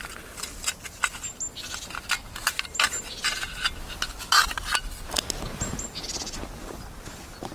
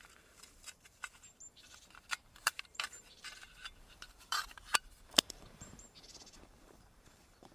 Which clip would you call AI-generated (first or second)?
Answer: second